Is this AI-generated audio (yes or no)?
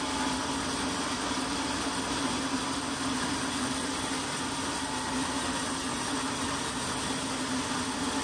no